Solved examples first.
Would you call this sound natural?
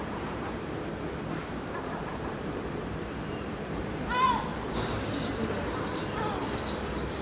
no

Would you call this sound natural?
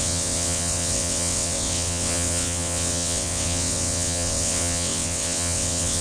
no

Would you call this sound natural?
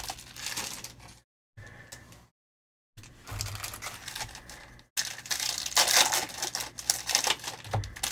yes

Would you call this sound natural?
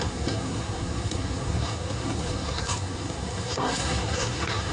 no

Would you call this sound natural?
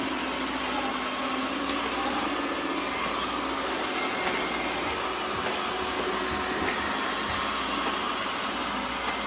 yes